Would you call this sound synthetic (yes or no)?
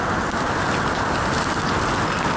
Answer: no